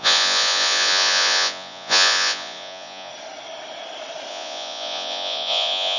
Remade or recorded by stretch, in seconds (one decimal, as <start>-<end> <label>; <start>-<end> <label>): 0.0-3.1 remade; 3.1-4.3 recorded; 4.3-6.0 remade